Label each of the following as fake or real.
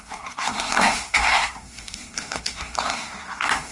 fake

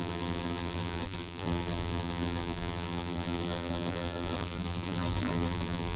fake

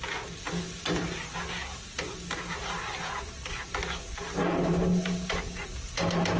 real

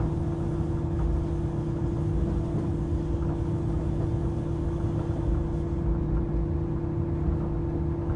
real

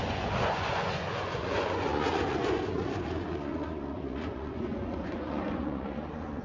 fake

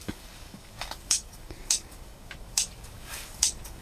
fake